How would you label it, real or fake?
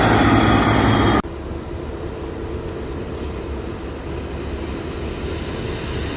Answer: real